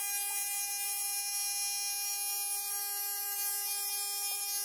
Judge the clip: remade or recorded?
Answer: recorded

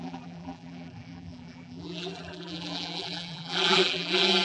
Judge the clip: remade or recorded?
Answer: remade